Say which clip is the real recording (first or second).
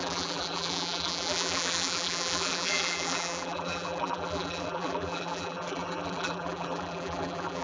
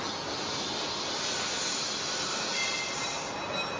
second